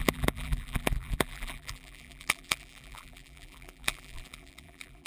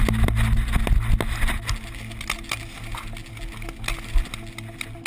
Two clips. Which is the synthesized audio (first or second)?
first